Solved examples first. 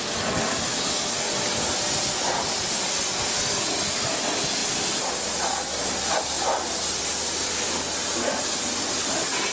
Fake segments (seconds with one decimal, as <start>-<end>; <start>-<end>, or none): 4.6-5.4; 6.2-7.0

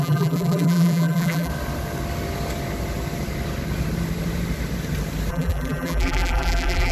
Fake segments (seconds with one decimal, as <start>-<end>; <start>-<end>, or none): 0.0-1.5; 5.3-6.9

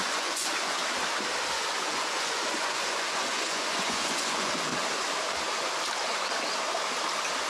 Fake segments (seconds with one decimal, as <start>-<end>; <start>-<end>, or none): 0.0-0.8; 1.5-4.7

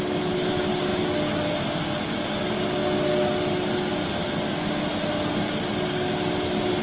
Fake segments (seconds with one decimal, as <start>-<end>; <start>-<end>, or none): none

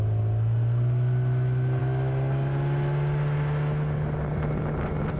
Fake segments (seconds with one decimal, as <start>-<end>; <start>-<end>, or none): none

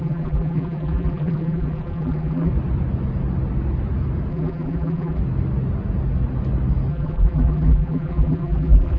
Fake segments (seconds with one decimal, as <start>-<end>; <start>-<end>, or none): 0.0-2.5; 4.3-5.2; 6.9-9.0

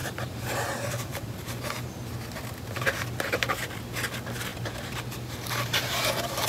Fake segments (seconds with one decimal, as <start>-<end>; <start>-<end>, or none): 0.0-3.9; 4.5-6.5